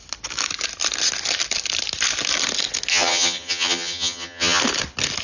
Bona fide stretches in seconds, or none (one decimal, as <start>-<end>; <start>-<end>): 0.0-2.9; 4.6-5.2